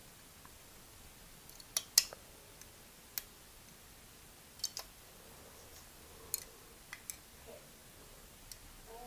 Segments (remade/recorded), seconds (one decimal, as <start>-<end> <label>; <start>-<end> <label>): 0.0-9.1 recorded